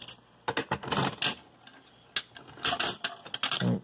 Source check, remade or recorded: recorded